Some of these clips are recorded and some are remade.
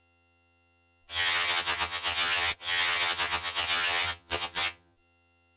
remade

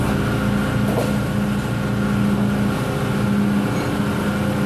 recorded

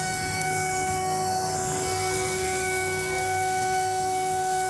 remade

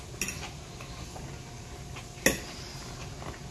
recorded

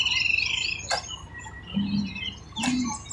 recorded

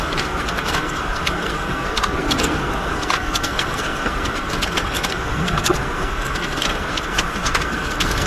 remade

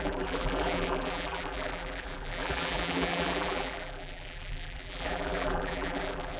remade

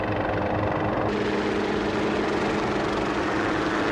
recorded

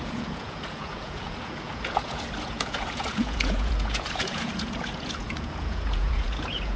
remade